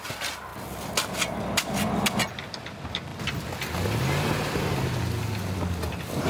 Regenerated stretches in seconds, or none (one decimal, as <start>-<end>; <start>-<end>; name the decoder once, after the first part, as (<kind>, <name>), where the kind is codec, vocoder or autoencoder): none